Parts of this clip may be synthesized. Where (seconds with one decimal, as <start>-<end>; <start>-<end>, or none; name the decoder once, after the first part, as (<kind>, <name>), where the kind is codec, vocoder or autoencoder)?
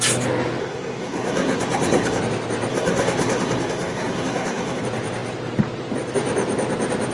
0.6-2.2 (codec, SNAC); 2.7-4.8